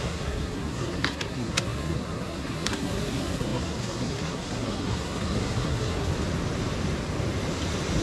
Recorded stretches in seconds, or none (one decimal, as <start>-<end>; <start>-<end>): 6.1-8.0